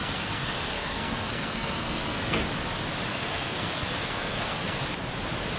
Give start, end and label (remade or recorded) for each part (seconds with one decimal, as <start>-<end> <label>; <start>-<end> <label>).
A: 0.0-2.4 remade; 2.4-3.1 recorded; 3.1-4.8 remade; 4.8-5.6 recorded